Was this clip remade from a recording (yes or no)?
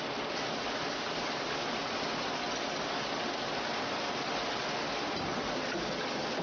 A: no